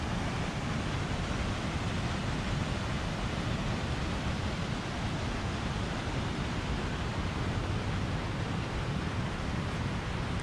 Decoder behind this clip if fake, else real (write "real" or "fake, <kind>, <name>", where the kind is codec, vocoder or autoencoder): real